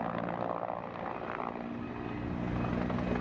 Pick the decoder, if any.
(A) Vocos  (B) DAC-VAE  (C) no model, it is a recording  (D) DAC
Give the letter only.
C